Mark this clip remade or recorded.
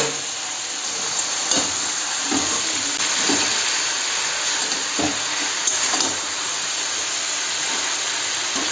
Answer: recorded